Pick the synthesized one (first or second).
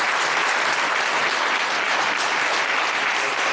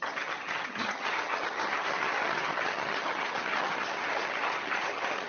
second